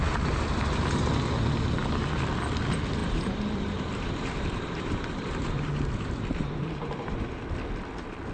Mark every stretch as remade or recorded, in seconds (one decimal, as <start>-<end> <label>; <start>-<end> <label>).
0.0-3.0 recorded; 3.0-7.4 remade; 7.4-8.3 recorded